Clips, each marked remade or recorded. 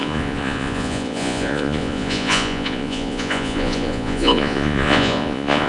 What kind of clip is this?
remade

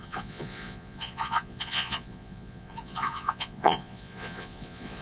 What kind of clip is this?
remade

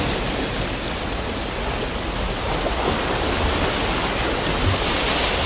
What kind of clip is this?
recorded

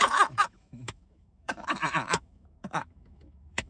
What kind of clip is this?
remade